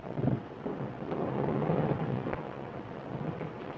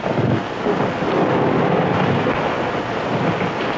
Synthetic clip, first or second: first